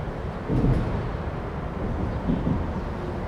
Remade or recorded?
recorded